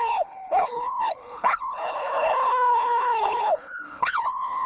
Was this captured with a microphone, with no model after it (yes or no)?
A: no